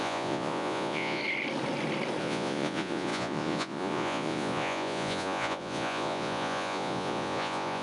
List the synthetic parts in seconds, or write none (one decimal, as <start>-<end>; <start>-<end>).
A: 0.0-1.2; 2.2-7.8